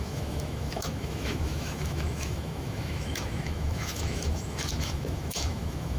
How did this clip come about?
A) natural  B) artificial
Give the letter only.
B